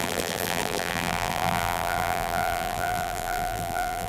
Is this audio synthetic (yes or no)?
yes